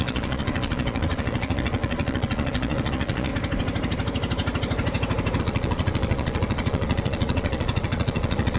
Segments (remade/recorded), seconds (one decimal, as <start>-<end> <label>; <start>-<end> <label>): 0.0-3.3 remade; 3.3-5.4 recorded; 5.4-8.6 remade